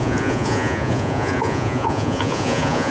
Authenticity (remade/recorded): remade